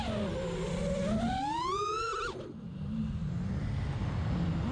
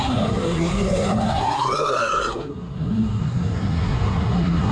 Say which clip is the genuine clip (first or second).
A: first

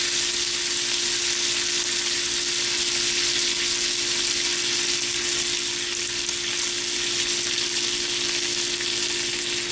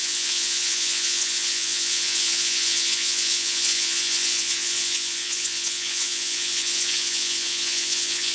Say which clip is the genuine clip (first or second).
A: first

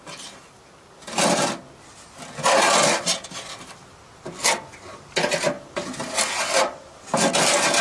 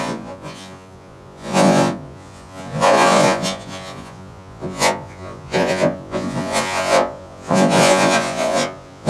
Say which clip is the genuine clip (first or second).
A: first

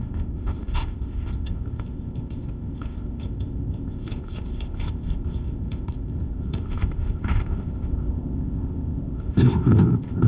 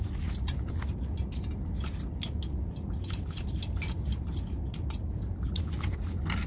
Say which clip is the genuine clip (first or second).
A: second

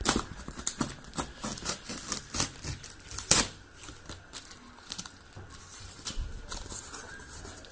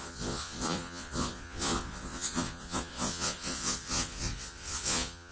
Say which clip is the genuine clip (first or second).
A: first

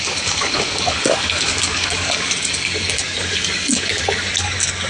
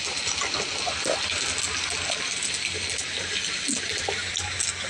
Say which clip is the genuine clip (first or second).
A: second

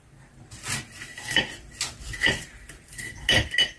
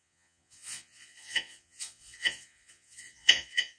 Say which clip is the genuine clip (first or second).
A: first